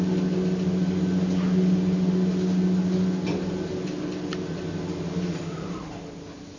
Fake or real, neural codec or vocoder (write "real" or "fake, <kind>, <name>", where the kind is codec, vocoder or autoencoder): real